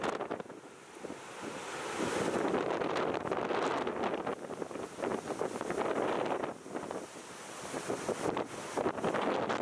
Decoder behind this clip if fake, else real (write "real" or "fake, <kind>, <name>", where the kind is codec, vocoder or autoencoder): real